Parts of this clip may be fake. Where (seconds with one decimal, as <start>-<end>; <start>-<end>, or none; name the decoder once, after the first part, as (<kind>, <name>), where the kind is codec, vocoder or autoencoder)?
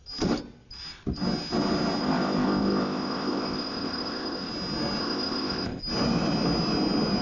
2.0-4.5 (codec, ZipCodec); 5.0-5.8